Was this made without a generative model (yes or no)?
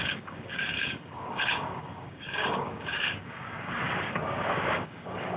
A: no